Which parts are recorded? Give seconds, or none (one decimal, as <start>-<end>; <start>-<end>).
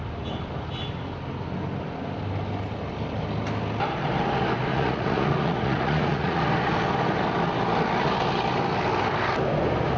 0.0-4.7; 6.4-10.0